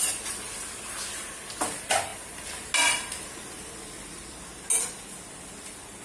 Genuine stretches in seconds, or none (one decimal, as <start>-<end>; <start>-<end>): 0.0-6.0